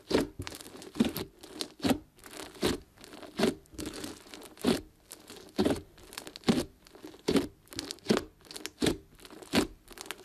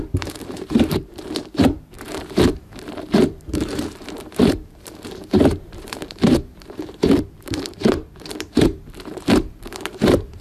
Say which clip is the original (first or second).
first